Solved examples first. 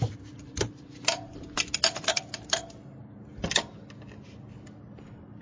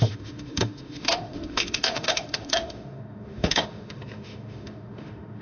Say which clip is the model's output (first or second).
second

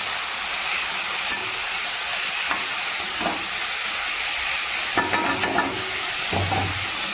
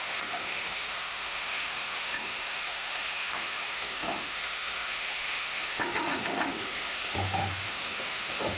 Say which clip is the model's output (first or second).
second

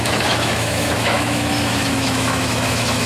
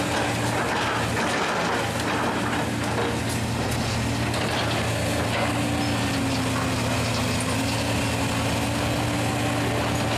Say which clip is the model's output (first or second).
first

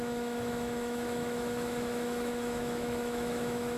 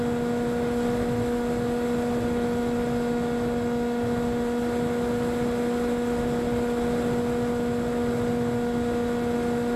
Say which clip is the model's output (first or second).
first